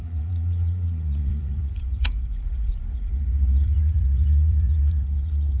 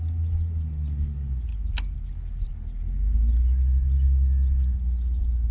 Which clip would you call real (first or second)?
second